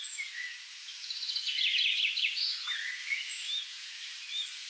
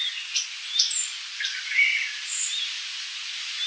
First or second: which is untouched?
second